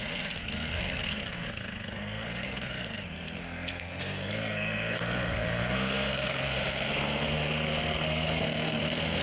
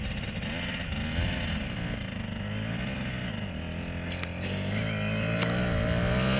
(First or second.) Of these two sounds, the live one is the second